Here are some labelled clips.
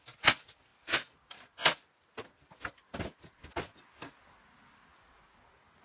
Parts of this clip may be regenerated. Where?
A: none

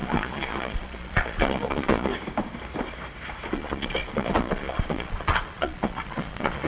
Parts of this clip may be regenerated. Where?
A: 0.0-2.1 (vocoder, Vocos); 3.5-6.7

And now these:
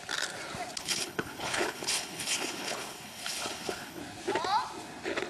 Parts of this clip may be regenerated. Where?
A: 0.8-4.0 (codec, HILCodec)

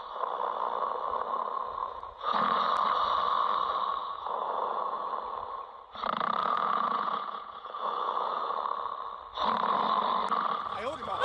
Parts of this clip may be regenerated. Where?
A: 1.8-2.6 (vocoder, Vocos); 4.0-5.1; 6.4-8.5

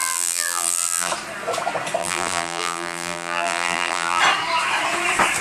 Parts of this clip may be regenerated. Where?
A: 0.0-1.1 (vocoder, BigVGAN v2); 2.0-4.2

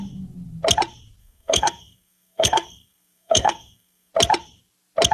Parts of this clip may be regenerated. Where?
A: 1.2-4.1 (codec, SNAC)

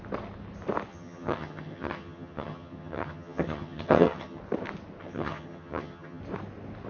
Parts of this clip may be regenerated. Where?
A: 0.9-4.4 (vocoder, HiFi-GAN); 5.0-6.2

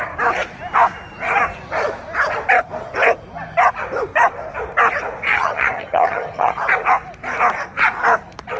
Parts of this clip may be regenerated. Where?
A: 5.3-6.6 (vocoder, HiFi-GAN)